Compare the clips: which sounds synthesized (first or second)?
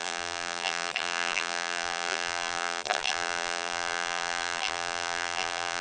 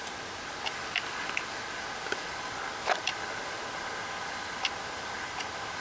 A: first